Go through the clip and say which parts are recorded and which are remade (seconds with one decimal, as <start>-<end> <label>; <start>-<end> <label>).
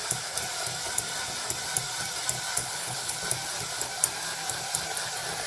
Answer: 0.0-2.6 recorded; 2.6-3.2 remade; 3.2-5.5 recorded